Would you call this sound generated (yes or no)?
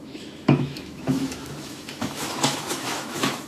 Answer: yes